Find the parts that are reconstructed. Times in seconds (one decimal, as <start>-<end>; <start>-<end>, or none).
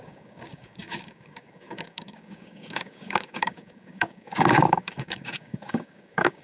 0.0-6.4